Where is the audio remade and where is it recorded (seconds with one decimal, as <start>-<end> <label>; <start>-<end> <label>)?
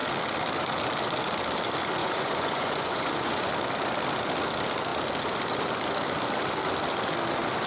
0.0-2.0 recorded; 2.0-3.5 remade; 3.5-7.7 recorded